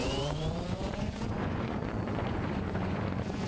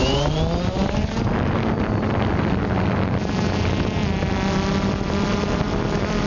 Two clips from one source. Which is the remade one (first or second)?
first